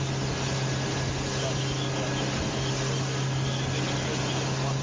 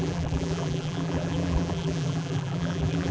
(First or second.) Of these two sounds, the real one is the first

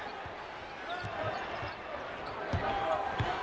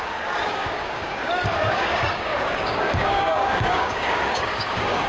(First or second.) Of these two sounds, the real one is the first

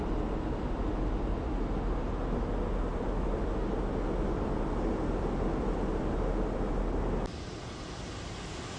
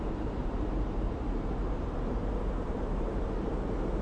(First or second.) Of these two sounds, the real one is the first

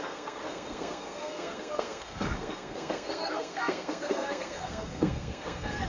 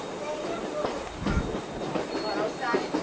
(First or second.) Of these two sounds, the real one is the second